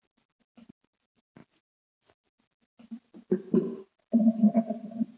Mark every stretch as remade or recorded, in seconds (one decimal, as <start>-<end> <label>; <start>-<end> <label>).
0.0-5.2 recorded